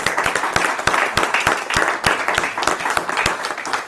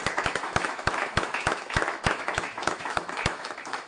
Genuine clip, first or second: first